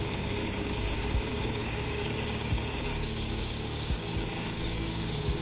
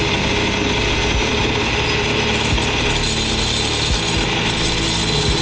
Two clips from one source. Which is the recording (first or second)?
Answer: second